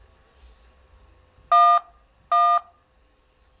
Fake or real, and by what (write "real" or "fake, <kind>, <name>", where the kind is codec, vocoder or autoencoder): real